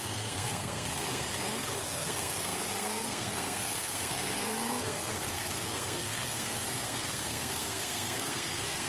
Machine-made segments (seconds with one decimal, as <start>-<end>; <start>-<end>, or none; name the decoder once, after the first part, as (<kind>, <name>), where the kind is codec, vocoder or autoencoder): 0.0-8.9 (codec, SNAC)